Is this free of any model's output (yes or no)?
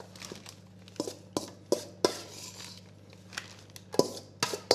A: yes